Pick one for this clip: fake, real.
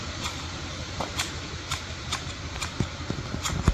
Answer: real